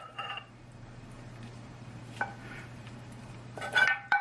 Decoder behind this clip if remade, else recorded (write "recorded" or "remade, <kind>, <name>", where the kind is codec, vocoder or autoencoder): remade, vocoder, BigVGAN v2